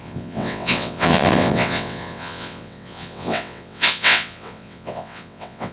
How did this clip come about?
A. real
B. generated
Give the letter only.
B